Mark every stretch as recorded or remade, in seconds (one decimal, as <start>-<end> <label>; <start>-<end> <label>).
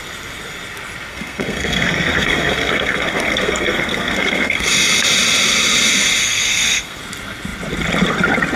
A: 0.0-1.1 recorded; 1.1-4.7 remade; 4.7-6.2 recorded; 6.2-7.0 remade; 7.0-8.6 recorded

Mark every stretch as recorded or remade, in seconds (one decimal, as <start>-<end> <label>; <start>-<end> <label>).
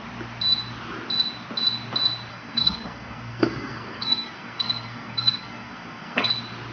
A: 0.0-2.3 recorded; 2.3-6.3 remade; 6.3-6.7 recorded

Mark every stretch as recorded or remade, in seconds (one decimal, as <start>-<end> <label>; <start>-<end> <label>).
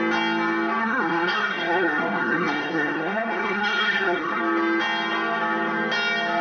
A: 0.0-0.8 recorded; 0.8-4.4 remade; 4.4-6.4 recorded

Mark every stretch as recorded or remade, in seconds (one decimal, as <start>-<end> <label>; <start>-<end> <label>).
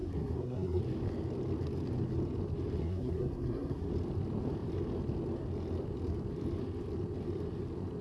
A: 0.0-0.8 remade; 0.8-2.8 recorded; 2.8-3.9 remade; 3.9-8.0 recorded